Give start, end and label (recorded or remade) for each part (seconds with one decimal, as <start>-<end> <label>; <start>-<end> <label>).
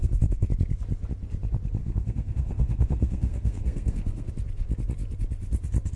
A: 0.0-0.5 remade; 0.5-1.8 recorded; 1.8-4.3 remade; 4.3-6.0 recorded